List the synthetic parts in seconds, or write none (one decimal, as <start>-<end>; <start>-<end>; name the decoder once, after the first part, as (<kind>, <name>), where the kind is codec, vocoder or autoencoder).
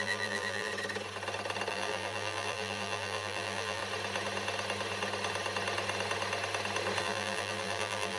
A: 0.0-0.7 (vocoder, BigVGAN v2); 1.7-3.8; 7.0-8.2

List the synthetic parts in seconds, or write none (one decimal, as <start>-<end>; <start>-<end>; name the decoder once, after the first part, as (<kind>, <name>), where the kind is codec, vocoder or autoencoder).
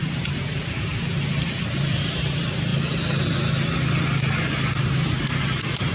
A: 0.0-0.9 (vocoder, BigVGAN v2); 1.6-2.7; 4.8-5.9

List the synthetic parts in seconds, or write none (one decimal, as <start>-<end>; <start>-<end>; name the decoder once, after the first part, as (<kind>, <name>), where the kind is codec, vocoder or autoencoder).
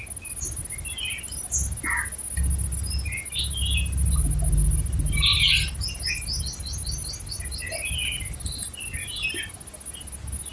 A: none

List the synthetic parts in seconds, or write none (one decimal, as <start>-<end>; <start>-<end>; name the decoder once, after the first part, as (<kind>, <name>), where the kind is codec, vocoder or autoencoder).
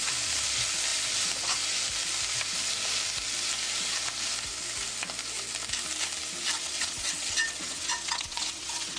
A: 6.6-9.0 (vocoder, WaveNeXt)